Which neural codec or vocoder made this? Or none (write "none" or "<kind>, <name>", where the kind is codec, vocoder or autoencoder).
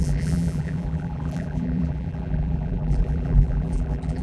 vocoder, BigVGAN v2